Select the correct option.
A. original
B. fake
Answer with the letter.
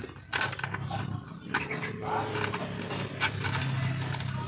A